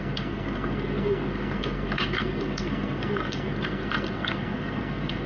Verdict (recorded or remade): remade